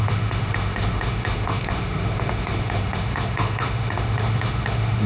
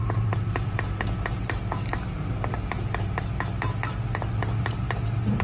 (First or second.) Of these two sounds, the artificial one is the first